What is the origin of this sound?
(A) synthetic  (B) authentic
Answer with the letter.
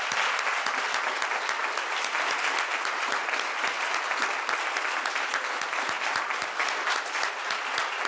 B